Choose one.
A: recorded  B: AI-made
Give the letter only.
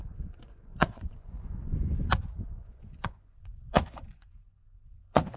B